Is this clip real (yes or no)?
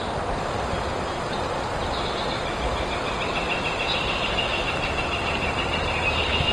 yes